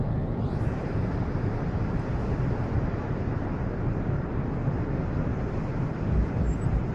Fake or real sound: real